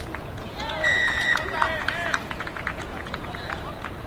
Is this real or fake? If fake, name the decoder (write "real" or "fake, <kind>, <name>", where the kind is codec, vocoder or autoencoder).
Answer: fake, vocoder, Vocos